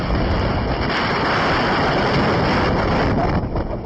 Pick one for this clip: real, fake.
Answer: real